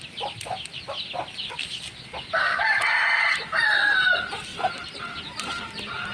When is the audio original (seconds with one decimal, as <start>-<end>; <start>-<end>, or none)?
0.0-6.1